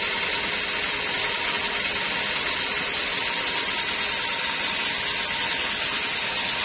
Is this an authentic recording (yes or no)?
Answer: yes